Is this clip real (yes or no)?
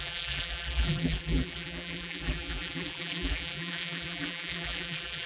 no